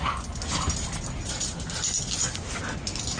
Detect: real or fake real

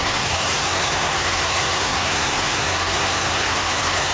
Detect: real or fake fake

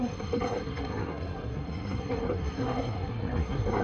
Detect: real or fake fake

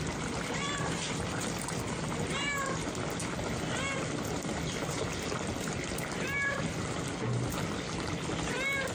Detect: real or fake real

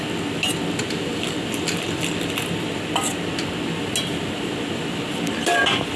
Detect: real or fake real